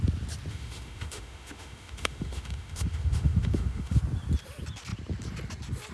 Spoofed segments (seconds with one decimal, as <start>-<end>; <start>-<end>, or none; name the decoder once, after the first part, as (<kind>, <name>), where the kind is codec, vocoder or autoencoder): 0.5-4.0 (autoencoder, DAC-VAE)